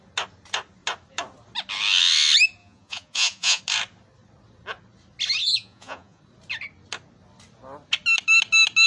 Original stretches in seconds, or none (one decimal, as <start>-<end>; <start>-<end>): 0.0-2.6; 3.6-5.4; 6.2-8.9